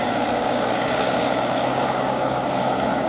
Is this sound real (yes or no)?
no